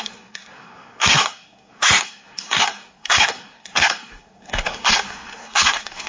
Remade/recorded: remade